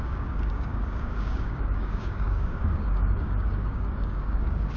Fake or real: fake